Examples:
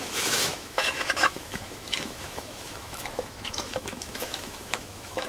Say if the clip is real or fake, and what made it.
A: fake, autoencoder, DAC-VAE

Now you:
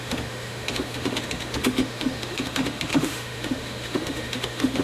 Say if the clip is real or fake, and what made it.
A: fake, autoencoder, DAC-VAE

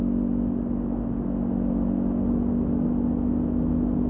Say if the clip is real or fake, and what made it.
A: real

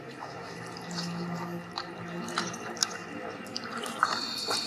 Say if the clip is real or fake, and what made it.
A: fake, vocoder, BigVGAN v2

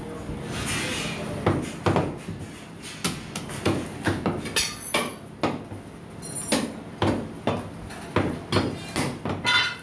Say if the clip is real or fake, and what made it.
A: real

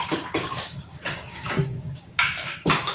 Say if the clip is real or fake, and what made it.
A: fake, codec, DAC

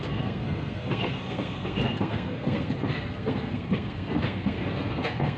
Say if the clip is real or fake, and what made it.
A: fake, codec, SNAC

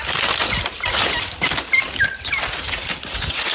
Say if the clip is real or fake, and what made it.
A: real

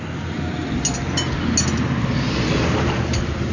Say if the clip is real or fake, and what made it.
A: real